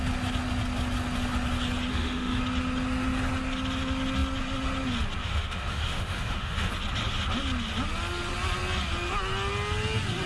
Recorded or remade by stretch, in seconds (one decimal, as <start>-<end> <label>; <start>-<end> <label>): 0.0-1.9 recorded; 1.9-2.4 remade; 2.4-5.2 recorded; 5.2-6.7 remade; 6.7-10.3 recorded